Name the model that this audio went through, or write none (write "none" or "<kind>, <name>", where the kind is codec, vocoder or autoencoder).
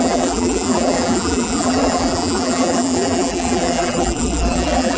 vocoder, BigVGAN v2